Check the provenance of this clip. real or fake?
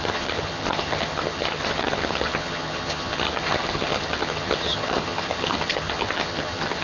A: fake